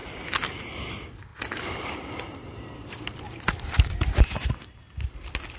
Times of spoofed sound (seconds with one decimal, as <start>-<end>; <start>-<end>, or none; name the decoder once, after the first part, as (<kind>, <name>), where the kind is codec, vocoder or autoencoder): 1.3-4.7 (vocoder, BigVGAN v2)